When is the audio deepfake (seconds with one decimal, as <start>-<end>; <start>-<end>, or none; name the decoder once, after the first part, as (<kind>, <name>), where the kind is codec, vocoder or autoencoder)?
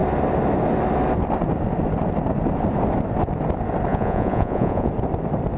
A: 3.9-4.9 (vocoder, Vocos)